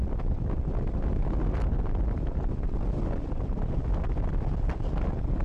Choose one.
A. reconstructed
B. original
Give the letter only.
B